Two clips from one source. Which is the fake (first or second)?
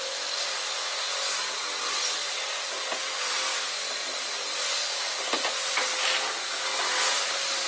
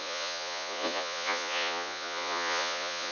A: second